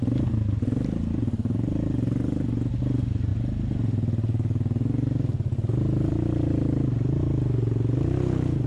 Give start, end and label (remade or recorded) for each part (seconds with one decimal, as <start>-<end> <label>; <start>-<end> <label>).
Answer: 0.0-8.7 recorded